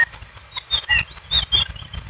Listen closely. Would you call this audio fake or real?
real